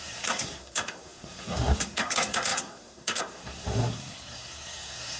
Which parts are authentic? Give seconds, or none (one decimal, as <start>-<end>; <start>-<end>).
none